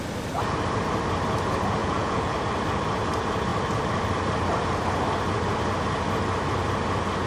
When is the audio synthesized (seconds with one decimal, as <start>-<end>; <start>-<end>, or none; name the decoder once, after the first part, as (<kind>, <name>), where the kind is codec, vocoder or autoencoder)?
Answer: 1.8-2.3 (vocoder, Vocos)